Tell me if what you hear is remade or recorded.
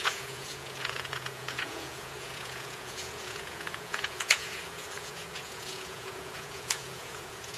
remade